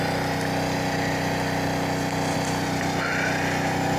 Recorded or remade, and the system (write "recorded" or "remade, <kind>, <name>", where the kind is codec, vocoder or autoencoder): recorded